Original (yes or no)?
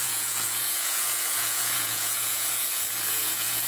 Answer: no